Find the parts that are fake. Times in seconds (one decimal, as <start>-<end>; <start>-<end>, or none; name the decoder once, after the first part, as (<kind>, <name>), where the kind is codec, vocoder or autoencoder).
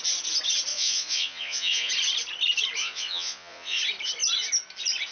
0.7-1.9 (vocoder, Vocos); 2.8-3.8